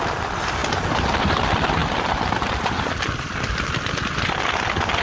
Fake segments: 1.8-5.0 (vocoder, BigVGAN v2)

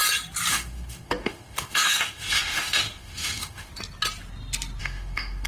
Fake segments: 0.5-3.7 (autoencoder, DAC-VAE); 4.8-5.5

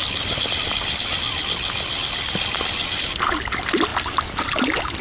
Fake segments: 3.9-4.4 (vocoder, BigVGAN v2)

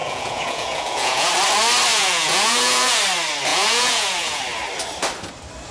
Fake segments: 0.0-1.3 (vocoder, Vocos); 1.9-3.0; 3.5-4.4

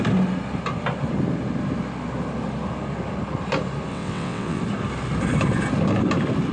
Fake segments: 3.9-4.6 (vocoder, WaveNeXt)

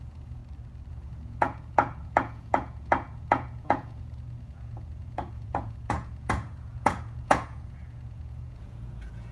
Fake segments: 0.0-0.4 (vocoder, Vocos); 0.9-9.3

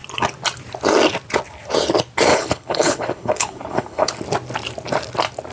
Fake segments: 2.3-4.1 (codec, HILCodec)